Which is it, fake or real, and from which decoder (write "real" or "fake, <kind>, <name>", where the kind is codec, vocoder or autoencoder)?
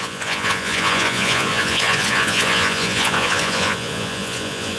fake, vocoder, Vocos